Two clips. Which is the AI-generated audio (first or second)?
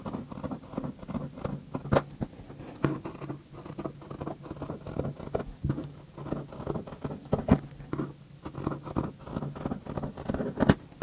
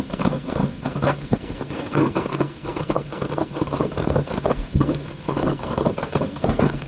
second